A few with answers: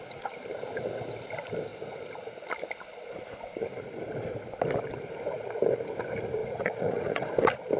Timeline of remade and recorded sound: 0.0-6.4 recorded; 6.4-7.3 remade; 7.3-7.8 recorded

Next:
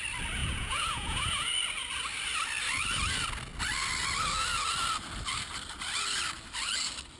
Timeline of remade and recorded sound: 0.0-0.4 recorded; 0.4-1.5 remade; 1.5-7.2 recorded